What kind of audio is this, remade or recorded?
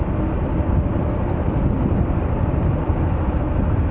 recorded